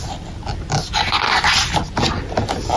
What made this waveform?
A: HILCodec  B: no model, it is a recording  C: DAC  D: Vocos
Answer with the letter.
B